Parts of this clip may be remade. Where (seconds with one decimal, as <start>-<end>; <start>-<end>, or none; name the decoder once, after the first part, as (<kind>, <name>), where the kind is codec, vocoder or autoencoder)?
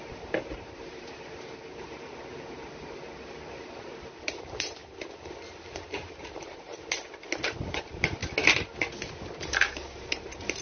0.0-4.8 (vocoder, BigVGAN v2); 5.5-6.7; 7.5-8.2; 9.4-10.6